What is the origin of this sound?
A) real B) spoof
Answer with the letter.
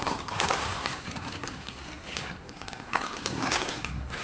B